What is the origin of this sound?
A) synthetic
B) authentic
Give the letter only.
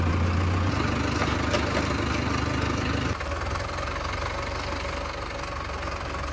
B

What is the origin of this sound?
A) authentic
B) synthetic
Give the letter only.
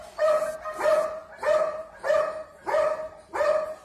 A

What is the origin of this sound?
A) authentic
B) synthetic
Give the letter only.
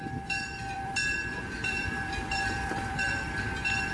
B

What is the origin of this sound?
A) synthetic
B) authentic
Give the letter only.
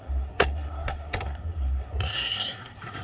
A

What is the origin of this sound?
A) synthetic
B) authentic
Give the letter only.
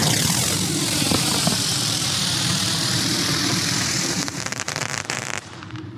A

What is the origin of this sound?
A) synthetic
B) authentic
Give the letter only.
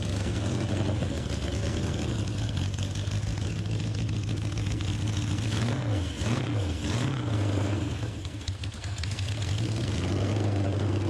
A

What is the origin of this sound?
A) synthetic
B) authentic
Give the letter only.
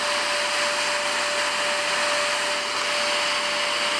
B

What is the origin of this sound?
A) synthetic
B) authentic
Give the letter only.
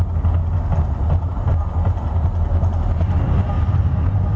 B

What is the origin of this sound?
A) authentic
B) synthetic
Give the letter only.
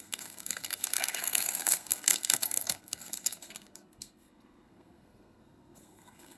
B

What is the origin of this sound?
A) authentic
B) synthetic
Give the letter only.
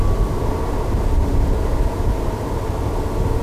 A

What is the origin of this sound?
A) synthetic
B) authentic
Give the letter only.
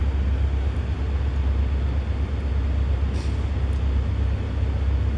B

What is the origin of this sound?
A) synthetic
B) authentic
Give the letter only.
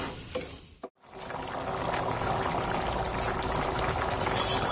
B